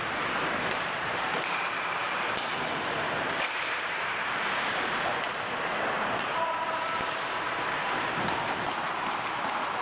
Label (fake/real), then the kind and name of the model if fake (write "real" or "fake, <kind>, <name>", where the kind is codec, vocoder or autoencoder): fake, vocoder, BigVGAN v2